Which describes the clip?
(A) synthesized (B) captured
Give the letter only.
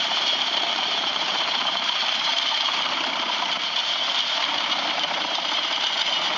A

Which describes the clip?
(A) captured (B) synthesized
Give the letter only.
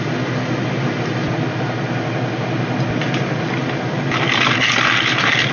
A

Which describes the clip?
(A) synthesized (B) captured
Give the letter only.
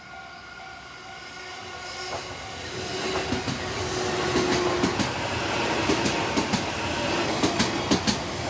B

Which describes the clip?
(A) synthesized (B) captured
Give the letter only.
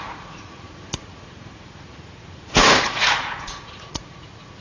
A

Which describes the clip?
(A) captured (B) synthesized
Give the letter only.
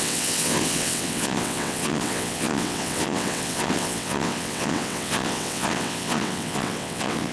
B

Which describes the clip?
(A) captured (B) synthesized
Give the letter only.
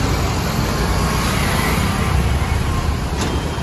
A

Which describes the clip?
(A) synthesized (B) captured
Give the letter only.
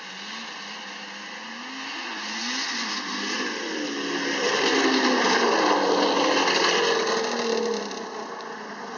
B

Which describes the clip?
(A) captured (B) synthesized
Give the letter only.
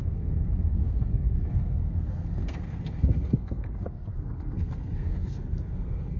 B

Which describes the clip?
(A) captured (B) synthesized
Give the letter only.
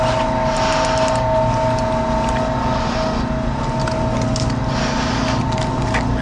A